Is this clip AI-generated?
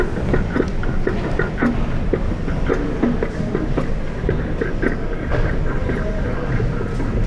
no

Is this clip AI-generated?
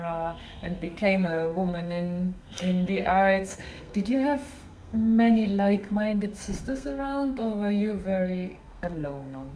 yes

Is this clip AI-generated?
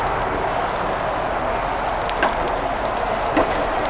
no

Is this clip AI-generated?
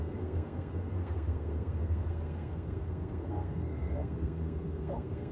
yes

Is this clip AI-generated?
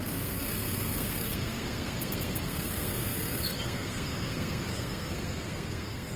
yes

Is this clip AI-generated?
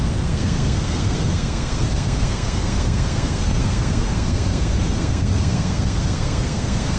yes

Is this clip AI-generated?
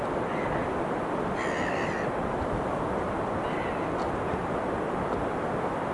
no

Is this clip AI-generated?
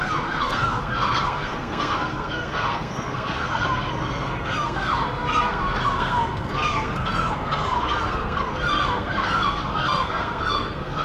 yes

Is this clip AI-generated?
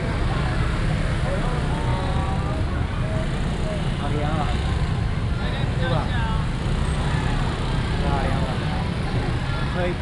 no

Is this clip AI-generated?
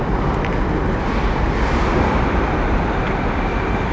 no